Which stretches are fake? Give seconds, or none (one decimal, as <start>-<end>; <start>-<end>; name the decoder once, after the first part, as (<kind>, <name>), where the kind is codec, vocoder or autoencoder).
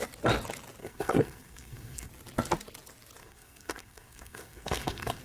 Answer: 0.8-2.1 (codec, SNAC); 3.2-5.2